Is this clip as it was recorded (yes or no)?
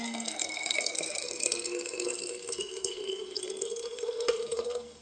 no